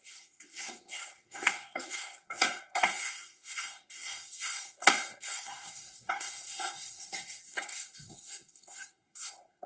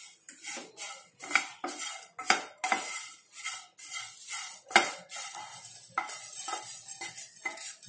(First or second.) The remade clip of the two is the first